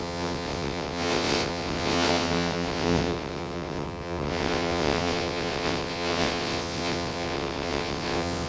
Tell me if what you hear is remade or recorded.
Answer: remade